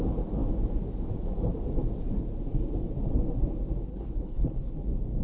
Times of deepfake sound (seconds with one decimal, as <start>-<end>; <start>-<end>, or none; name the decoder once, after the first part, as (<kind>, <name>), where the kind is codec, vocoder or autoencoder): 3.9-4.7 (codec, HILCodec)